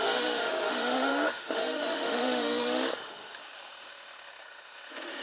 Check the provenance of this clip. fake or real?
fake